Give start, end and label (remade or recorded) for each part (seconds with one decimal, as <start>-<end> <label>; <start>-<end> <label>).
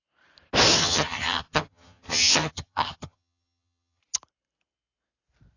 0.0-0.8 recorded; 0.8-4.0 remade; 4.0-5.6 recorded